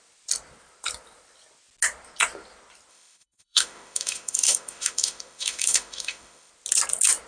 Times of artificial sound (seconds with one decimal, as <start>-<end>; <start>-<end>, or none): 2.9-6.5